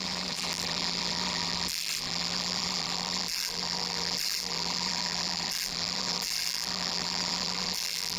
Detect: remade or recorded remade